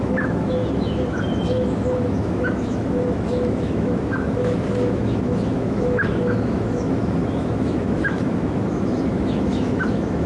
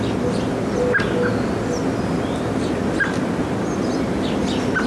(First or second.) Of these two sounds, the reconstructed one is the first